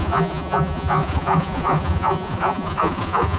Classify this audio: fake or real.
fake